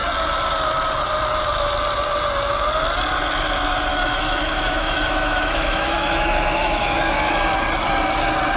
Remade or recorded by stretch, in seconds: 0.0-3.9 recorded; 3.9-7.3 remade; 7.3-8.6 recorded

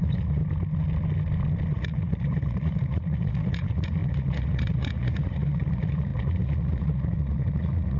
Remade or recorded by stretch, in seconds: 0.0-0.4 remade; 0.4-1.7 recorded; 1.7-8.0 remade